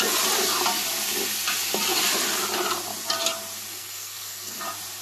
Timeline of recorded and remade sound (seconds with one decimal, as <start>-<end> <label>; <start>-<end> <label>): 0.0-3.7 recorded; 3.7-4.6 remade; 4.6-5.0 recorded